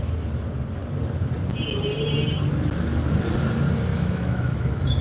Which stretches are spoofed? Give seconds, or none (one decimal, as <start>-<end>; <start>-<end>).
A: 3.9-5.0